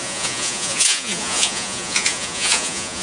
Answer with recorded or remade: remade